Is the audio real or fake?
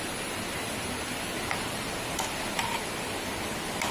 real